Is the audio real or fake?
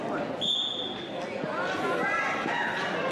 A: real